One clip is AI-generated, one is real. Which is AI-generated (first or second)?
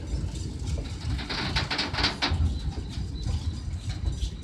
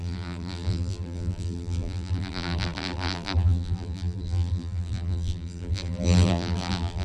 second